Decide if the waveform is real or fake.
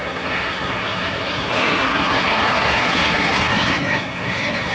fake